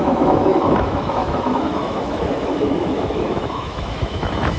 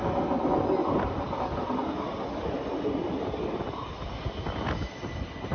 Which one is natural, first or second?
second